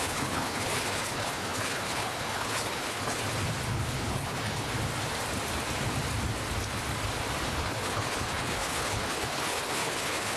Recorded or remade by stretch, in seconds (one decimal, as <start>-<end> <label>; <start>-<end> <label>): 0.0-3.2 remade; 3.2-3.7 recorded; 3.7-4.7 remade; 4.7-7.5 recorded; 7.5-10.4 remade